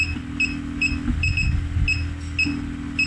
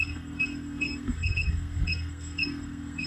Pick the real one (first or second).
first